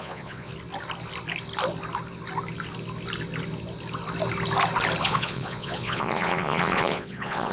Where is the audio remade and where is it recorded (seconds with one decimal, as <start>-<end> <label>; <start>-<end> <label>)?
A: 0.0-0.5 remade; 0.5-5.0 recorded; 5.0-7.5 remade